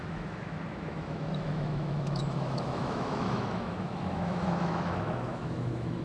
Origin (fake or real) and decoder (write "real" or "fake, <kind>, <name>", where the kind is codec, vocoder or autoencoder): fake, autoencoder, DAC-VAE